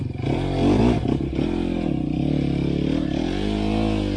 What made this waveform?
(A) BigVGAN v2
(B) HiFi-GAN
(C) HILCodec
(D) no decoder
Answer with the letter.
D